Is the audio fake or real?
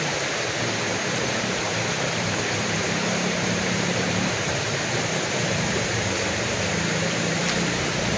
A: fake